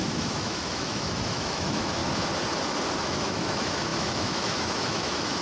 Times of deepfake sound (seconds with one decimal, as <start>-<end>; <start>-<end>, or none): 0.0-2.0; 3.0-5.4